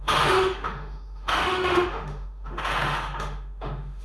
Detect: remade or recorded remade